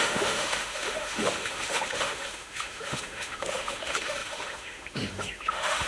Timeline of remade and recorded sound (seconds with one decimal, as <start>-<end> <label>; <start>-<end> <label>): 0.0-5.9 remade